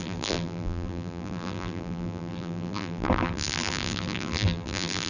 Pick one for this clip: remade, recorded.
remade